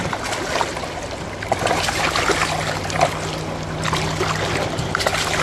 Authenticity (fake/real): real